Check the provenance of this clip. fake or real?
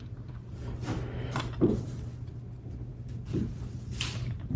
real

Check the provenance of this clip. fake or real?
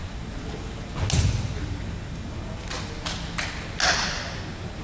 real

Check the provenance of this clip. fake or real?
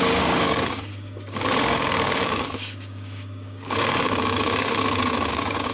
fake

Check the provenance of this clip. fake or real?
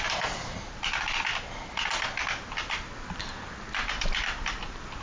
real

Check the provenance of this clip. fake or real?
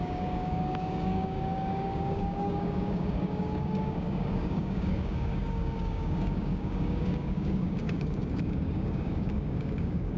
fake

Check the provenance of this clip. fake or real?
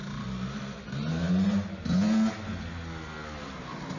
real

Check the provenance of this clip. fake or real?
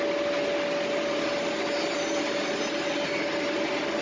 real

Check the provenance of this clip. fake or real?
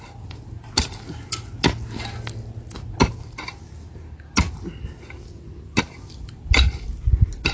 real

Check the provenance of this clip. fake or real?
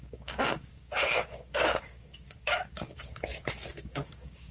fake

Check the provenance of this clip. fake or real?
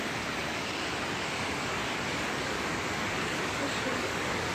fake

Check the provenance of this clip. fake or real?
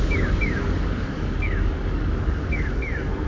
fake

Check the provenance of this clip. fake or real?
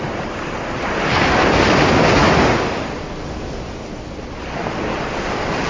real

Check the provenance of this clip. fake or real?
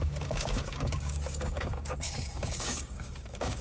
fake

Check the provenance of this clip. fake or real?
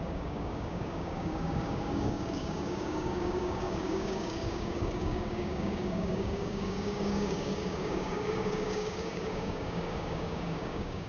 fake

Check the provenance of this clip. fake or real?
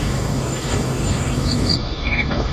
fake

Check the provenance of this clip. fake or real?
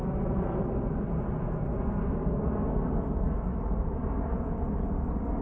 real